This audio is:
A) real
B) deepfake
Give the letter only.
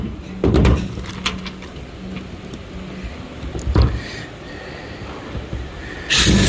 A